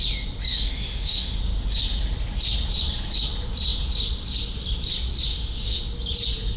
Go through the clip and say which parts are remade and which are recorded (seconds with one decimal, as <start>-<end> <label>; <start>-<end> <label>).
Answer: 0.0-0.5 recorded; 0.5-1.4 remade; 1.4-5.3 recorded; 5.3-5.8 remade; 5.8-6.6 recorded